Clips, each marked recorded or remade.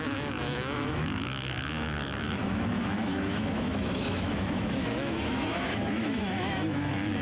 remade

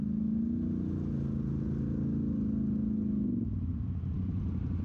recorded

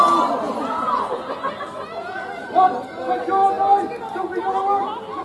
recorded